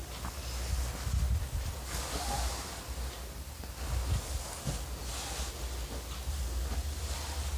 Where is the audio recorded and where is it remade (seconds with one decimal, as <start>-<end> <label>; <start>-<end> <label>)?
0.0-7.6 recorded